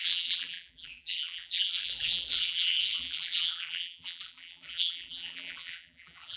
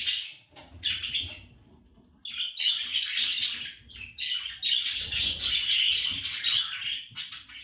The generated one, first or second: first